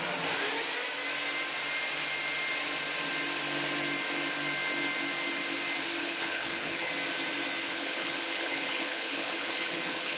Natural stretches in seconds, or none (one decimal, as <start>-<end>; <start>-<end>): 0.0-6.0; 6.9-7.6